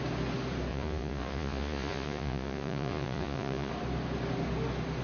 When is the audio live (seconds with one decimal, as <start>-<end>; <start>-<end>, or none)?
0.0-0.7; 3.7-5.0